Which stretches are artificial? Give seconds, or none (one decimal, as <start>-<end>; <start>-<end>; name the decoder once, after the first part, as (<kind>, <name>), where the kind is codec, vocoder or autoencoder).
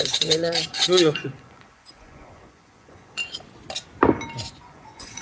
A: 0.0-3.2 (vocoder, Vocos); 4.5-5.2